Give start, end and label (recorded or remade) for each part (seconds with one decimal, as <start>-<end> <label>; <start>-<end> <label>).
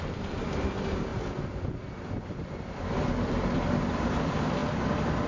0.0-5.3 recorded